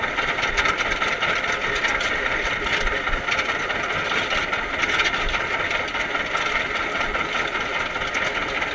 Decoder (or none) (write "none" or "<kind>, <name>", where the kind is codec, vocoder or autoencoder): none